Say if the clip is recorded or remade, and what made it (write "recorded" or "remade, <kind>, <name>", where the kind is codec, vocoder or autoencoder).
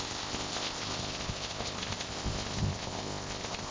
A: remade, codec, ZipCodec